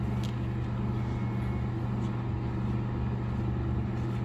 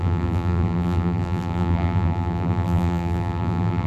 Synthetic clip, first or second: second